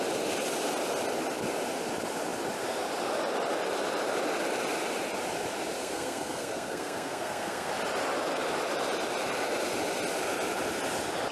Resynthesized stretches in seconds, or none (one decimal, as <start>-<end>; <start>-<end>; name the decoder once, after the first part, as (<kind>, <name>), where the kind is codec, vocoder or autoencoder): 5.8-7.7 (codec, SNAC)